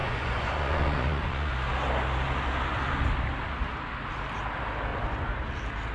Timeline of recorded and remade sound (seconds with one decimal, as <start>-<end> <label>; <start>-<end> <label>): 0.0-1.5 remade; 1.5-4.9 recorded; 4.9-5.5 remade; 5.5-5.9 recorded